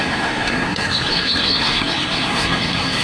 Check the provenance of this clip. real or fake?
fake